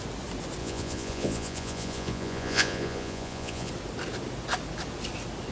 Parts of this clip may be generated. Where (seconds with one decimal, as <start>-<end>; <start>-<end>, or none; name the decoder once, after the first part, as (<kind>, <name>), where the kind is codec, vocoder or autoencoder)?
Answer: 0.6-3.7 (vocoder, Vocos)